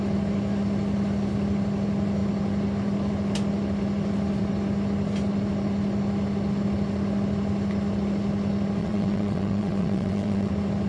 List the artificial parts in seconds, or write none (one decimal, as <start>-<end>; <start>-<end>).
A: 8.8-10.5